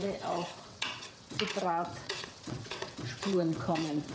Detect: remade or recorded remade